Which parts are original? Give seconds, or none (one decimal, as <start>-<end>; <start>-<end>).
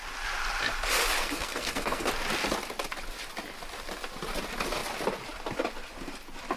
0.0-1.2; 2.1-6.6